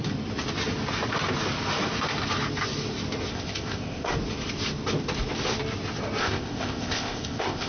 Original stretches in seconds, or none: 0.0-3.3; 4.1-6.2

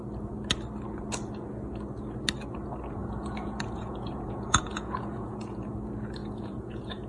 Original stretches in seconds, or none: 0.0-3.0; 5.7-6.2

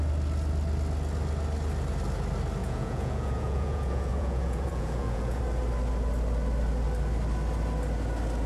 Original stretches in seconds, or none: 0.0-2.6; 5.4-8.5

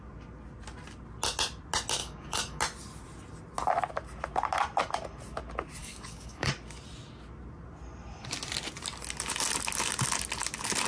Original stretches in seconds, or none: 0.0-2.0; 2.6-5.8; 6.5-10.9